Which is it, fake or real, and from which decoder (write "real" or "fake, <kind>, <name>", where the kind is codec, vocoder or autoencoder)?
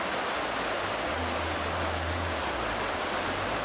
real